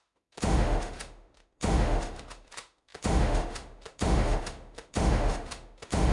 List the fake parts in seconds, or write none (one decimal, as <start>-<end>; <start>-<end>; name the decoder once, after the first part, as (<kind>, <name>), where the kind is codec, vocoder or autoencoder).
0.0-6.1 (autoencoder, DAC-VAE)